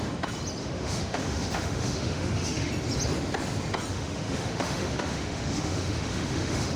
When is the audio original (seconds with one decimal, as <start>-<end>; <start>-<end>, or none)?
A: 0.0-0.6; 2.7-3.9